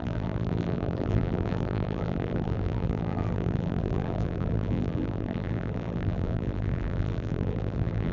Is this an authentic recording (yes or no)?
no